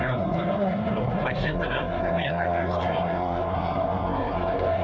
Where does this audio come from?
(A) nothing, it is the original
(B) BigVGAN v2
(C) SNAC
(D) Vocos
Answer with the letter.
C